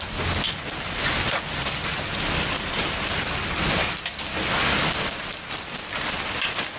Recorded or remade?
recorded